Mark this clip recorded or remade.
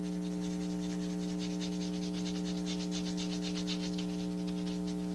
recorded